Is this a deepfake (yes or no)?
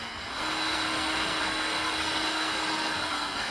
yes